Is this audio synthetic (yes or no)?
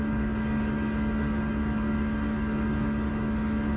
yes